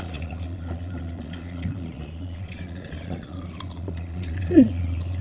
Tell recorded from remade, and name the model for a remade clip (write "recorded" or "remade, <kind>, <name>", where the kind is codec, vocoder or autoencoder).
remade, vocoder, Vocos